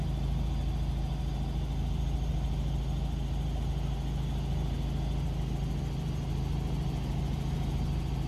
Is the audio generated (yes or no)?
no